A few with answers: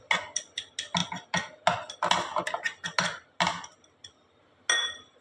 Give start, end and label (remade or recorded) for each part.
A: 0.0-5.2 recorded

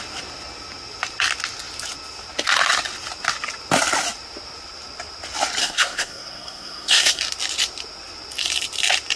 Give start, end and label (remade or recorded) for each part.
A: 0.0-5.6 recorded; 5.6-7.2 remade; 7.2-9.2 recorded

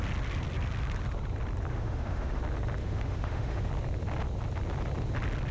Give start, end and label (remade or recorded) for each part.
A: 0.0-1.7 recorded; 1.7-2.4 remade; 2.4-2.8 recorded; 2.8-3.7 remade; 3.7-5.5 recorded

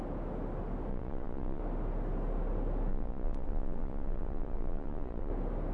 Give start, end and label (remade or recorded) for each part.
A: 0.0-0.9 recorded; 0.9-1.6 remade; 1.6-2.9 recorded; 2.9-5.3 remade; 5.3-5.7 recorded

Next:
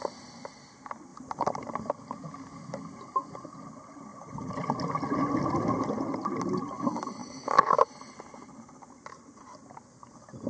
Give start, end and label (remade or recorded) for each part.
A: 0.0-7.2 recorded; 7.2-7.8 remade; 7.8-10.5 recorded